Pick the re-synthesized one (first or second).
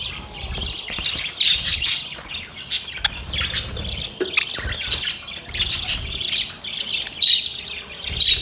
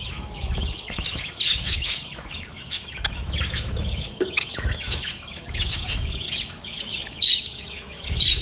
second